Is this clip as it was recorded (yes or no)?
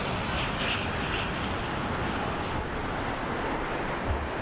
yes